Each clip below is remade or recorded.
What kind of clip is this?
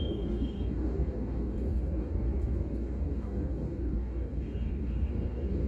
remade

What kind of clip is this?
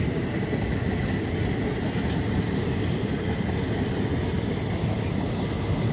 recorded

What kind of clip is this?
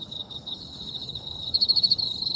remade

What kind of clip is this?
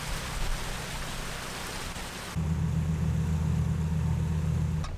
recorded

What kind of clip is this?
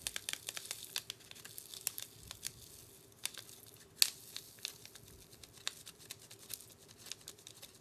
recorded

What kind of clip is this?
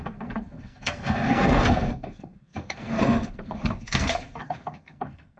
remade